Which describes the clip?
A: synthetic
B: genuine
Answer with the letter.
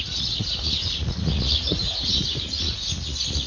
A